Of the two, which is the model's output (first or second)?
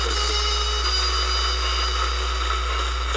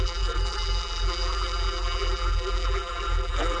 second